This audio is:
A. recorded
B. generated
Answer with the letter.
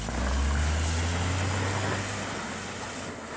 A